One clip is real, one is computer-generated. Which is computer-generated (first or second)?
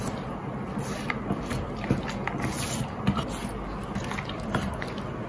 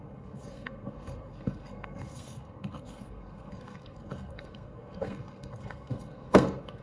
second